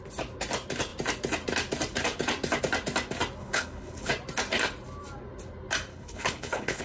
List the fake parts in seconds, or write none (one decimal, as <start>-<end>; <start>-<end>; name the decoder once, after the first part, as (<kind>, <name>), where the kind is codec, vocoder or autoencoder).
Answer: 3.4-4.1 (codec, HILCodec); 5.9-6.8